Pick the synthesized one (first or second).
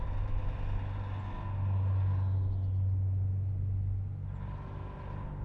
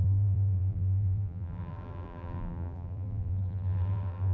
second